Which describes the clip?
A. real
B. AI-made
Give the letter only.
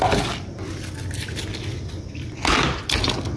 A